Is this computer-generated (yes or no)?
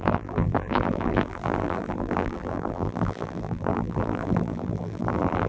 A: yes